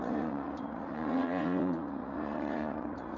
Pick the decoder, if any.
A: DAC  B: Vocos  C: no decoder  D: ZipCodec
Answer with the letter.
B